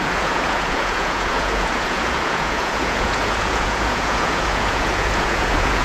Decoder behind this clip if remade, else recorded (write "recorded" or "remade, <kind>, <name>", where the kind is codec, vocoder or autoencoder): remade, vocoder, Vocos